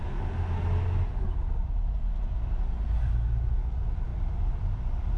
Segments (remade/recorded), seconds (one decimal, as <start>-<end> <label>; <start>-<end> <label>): 0.0-5.2 recorded